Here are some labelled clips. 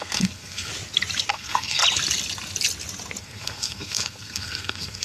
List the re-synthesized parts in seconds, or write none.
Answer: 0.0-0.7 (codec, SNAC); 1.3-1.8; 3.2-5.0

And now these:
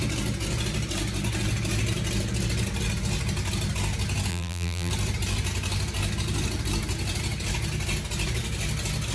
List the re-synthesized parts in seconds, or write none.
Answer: 4.3-4.9 (vocoder, BigVGAN v2)

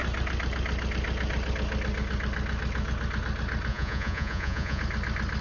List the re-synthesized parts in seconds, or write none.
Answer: 3.7-4.8 (vocoder, Vocos)

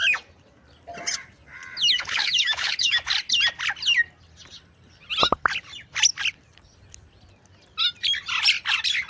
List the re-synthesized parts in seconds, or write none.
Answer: 1.8-3.1 (autoencoder, DAC-VAE)

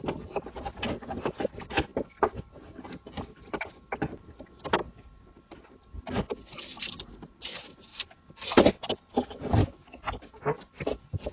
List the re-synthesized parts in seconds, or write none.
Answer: 9.6-10.3 (codec, DAC)

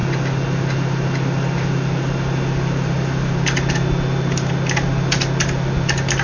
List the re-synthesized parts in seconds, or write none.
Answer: none

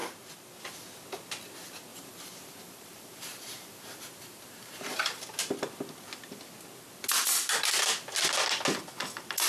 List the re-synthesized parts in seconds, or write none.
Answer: 1.9-5.2 (vocoder, BigVGAN v2)

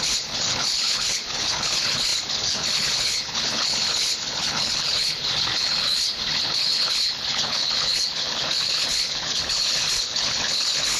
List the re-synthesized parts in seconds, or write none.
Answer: 0.0-11.0 (codec, HILCodec)